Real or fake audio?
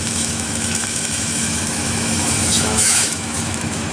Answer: fake